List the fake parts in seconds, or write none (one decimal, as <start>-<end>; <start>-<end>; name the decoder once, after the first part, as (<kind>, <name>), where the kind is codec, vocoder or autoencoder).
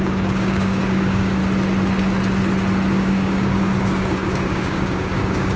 0.0-1.4 (codec, DAC); 2.9-5.6